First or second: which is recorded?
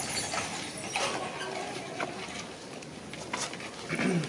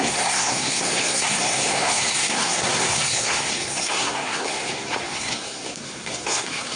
first